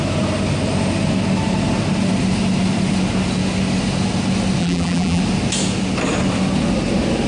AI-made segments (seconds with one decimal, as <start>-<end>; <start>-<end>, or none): 4.6-5.2